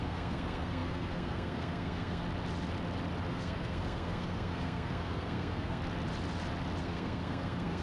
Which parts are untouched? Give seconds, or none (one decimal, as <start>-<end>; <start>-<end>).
2.2-3.3; 5.8-6.8